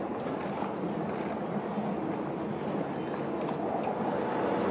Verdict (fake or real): real